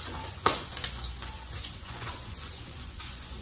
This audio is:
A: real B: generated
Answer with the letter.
B